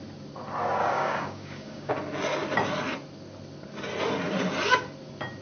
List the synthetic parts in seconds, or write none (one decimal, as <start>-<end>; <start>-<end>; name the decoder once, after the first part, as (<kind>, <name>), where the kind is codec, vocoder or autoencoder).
0.8-1.9 (codec, DAC)